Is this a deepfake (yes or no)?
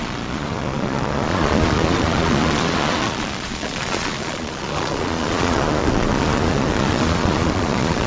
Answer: yes